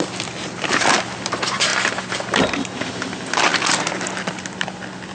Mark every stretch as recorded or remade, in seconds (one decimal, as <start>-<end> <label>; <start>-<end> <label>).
0.0-5.1 recorded